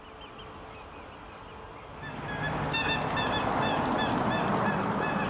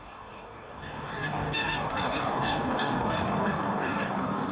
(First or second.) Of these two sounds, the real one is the first